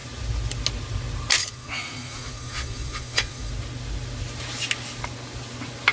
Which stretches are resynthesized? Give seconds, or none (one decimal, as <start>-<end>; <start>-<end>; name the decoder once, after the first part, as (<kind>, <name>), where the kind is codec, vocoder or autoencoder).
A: 1.4-3.5 (vocoder, Vocos)